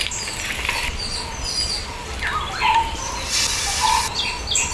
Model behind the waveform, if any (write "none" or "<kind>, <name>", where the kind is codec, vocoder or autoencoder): none